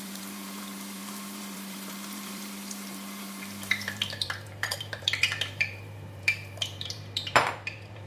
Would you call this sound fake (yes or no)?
yes